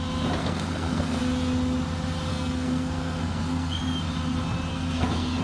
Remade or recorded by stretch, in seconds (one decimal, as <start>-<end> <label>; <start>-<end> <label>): 0.0-0.4 recorded; 0.4-1.2 remade; 1.2-2.3 recorded; 2.3-3.8 remade; 3.8-4.7 recorded; 4.7-5.4 remade